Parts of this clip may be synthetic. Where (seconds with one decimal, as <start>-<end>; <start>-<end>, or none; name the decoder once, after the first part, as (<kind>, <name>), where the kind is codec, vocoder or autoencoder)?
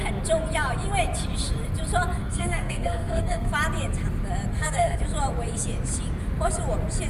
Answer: 2.2-3.5 (codec, SNAC); 4.5-5.0